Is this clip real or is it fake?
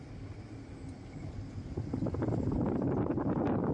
real